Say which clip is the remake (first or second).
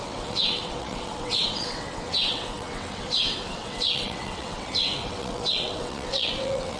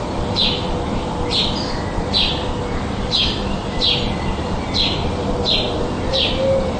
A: first